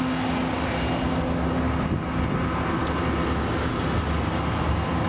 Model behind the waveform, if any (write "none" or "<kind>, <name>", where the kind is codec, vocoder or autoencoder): none